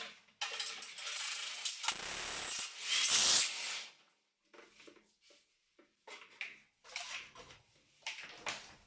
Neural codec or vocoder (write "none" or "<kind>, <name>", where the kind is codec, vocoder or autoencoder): none